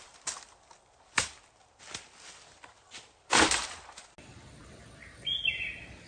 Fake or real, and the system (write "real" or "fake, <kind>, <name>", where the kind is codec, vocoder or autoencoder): real